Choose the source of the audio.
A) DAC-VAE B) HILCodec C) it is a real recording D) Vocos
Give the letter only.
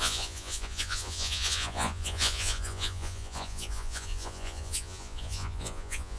D